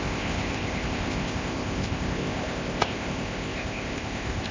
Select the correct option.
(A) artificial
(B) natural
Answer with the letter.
A